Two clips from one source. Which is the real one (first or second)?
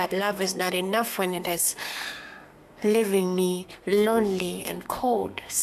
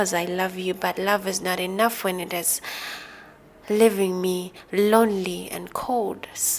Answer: second